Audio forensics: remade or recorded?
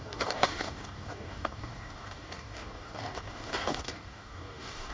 remade